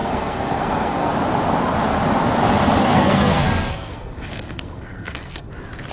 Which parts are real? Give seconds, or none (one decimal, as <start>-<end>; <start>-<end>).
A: 1.1-2.8; 5.5-5.9